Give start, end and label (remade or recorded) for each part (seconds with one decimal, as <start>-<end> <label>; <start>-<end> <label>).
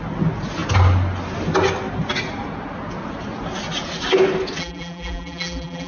0.0-4.6 recorded; 4.6-5.9 remade